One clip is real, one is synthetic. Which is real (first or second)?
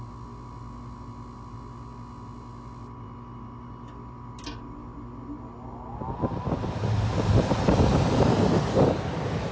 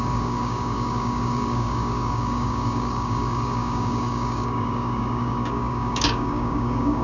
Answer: first